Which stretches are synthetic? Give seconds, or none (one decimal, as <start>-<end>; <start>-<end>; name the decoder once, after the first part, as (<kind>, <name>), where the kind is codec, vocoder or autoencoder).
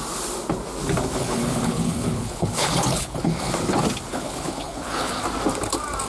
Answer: 1.1-3.5 (codec, HILCodec); 4.1-5.2